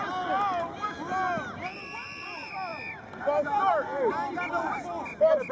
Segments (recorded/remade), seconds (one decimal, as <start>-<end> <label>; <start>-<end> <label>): 0.0-5.5 recorded